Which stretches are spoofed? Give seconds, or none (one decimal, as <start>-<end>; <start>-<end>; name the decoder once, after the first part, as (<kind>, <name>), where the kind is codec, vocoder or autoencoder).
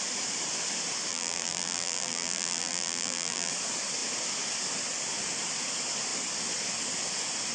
1.1-3.5 (vocoder, BigVGAN v2)